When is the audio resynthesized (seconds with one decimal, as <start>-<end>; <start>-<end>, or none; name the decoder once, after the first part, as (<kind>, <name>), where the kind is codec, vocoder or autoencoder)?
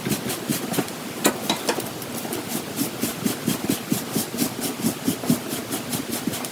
0.5-1.3 (vocoder, BigVGAN v2); 3.1-3.7